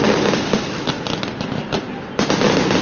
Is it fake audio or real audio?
real